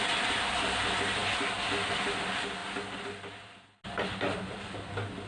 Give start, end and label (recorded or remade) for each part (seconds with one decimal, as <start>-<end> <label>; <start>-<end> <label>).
0.0-5.3 recorded